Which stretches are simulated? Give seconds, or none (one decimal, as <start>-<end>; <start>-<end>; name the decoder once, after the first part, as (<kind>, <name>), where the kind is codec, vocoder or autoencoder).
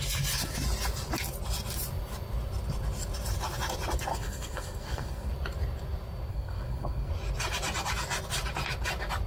4.1-5.3 (codec, SNAC); 6.3-7.1